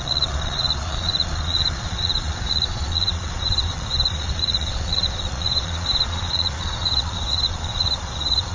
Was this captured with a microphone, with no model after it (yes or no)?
no